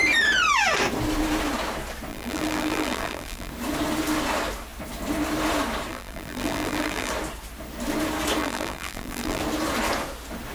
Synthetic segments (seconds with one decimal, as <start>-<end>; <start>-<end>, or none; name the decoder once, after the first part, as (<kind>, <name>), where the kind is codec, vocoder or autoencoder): 2.1-3.5 (vocoder, BigVGAN v2); 5.9-7.1; 8.4-9.4